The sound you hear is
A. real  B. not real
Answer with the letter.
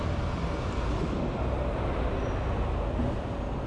A